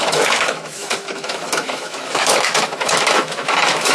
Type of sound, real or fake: fake